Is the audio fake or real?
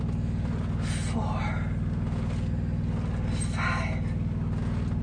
real